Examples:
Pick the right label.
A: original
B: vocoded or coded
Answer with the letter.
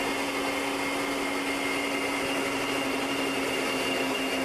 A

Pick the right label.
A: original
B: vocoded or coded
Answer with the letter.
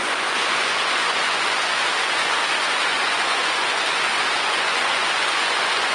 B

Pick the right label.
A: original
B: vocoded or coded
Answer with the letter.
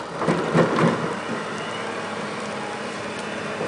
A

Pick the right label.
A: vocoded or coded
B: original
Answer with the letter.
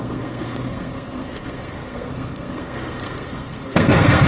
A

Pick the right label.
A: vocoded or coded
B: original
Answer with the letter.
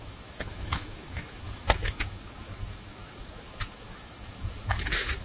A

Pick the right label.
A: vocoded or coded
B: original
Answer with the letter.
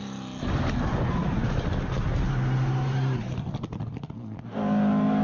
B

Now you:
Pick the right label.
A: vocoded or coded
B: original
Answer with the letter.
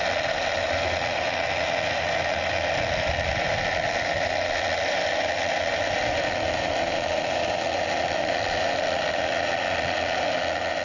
B